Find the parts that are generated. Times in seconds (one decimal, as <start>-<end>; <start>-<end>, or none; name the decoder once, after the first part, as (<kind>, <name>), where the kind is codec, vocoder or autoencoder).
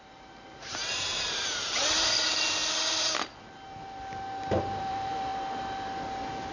0.0-2.6 (vocoder, BigVGAN v2); 4.6-5.3